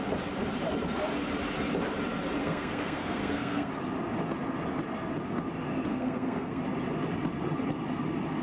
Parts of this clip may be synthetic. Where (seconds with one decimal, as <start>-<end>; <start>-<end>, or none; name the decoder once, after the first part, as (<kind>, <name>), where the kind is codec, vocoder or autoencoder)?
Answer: 2.4-3.7 (codec, SNAC); 5.9-6.6